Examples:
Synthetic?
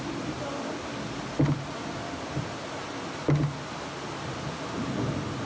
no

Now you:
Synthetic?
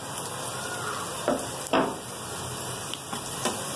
no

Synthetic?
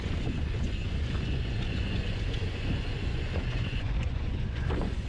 yes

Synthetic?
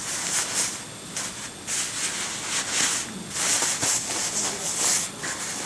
no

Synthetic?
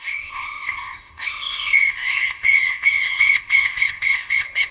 yes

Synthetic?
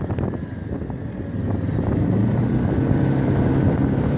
no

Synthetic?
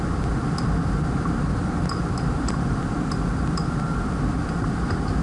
yes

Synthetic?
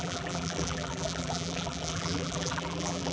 yes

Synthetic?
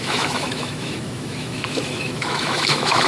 yes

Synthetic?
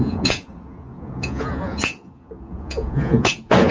yes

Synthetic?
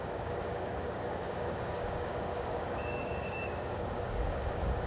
yes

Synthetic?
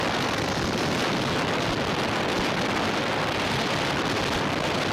no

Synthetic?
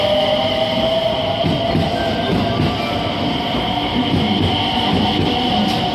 no